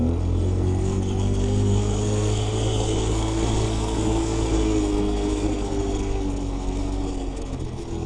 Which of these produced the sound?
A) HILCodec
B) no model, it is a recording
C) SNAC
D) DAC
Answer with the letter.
C